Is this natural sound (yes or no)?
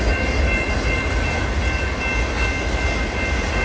yes